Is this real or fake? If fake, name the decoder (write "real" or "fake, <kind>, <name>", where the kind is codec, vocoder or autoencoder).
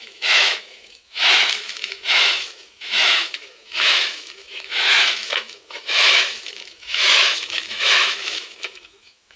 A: fake, autoencoder, DAC-VAE